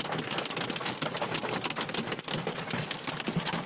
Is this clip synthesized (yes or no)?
no